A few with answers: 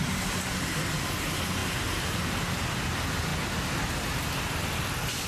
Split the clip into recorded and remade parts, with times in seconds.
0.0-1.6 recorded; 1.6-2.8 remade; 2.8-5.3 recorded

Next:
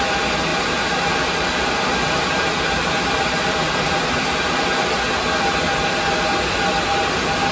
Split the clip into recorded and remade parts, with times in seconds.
0.0-0.5 recorded; 0.5-5.0 remade; 5.0-7.5 recorded

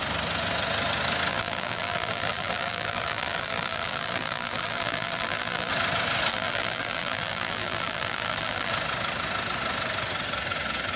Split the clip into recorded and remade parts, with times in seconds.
0.0-1.3 recorded; 1.3-5.7 remade; 5.7-6.3 recorded; 6.3-8.7 remade; 8.7-11.0 recorded

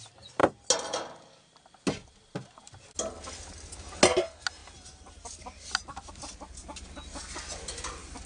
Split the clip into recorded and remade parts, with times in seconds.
0.0-8.3 recorded

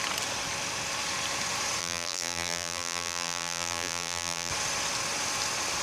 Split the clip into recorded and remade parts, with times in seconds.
0.0-1.8 recorded; 1.8-4.5 remade; 4.5-5.8 recorded

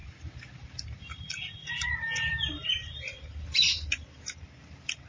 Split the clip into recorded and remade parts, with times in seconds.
0.0-1.9 remade; 1.9-2.3 recorded; 2.3-4.4 remade; 4.4-5.1 recorded

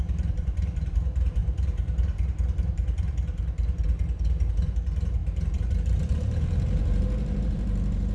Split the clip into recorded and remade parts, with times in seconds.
0.0-8.1 remade

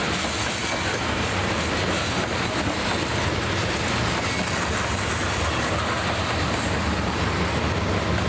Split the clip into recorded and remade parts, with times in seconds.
0.0-8.3 recorded